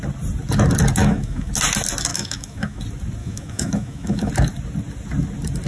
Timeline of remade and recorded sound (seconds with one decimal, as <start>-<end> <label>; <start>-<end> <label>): 0.0-1.0 recorded; 1.0-1.5 remade; 1.5-2.1 recorded; 2.1-2.8 remade; 2.8-3.2 recorded; 3.2-4.3 remade; 4.3-5.7 recorded